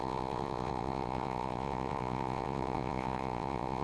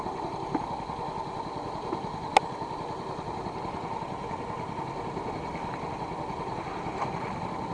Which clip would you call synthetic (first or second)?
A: first